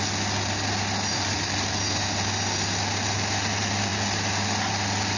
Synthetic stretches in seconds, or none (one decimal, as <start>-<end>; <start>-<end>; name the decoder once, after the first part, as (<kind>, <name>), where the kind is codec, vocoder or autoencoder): none